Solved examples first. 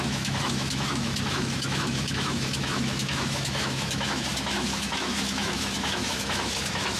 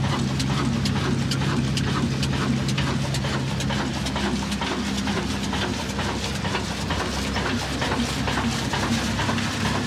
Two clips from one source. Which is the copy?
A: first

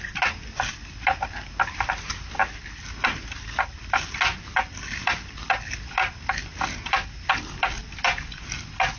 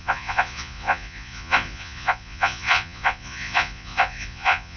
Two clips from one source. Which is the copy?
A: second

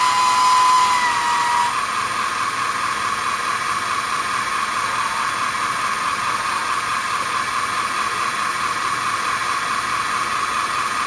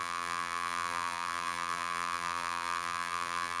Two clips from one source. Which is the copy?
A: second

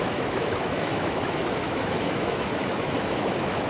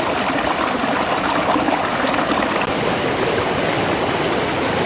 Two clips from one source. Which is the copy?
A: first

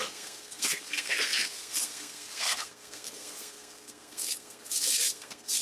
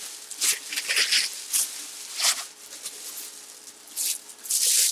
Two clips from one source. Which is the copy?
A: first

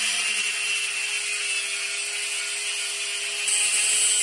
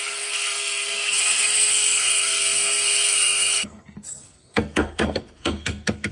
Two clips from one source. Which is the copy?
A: second